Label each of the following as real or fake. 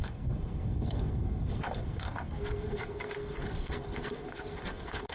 fake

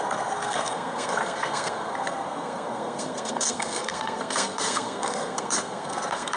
fake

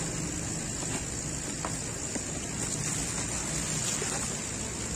real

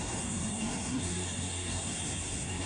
fake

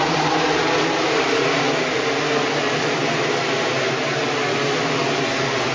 real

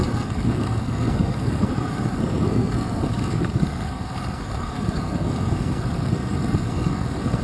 fake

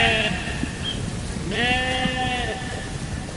real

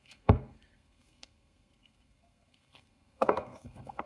fake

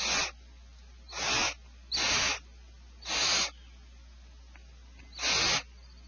real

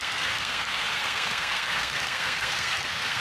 fake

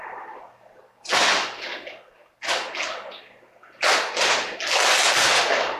real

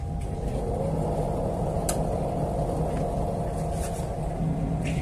real